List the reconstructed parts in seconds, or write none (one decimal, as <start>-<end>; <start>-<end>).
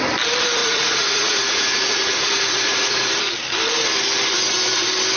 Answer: 0.6-3.1